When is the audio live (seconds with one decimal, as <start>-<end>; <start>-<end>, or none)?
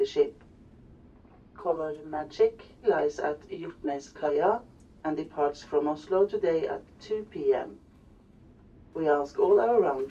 0.0-1.6; 2.2-3.5; 4.3-7.6; 8.4-10.1